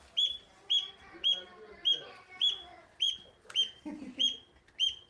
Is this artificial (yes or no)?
no